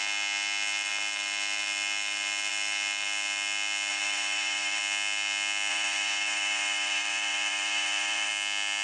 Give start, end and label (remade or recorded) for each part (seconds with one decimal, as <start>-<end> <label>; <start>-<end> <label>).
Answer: 0.0-3.9 recorded; 3.9-4.8 remade; 4.8-5.7 recorded; 5.7-8.3 remade; 8.3-8.8 recorded